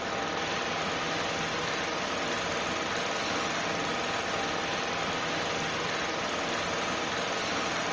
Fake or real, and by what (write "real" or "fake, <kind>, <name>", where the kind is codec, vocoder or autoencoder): real